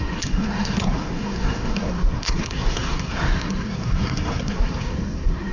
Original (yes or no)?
no